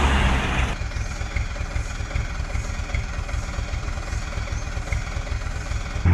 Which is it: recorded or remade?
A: recorded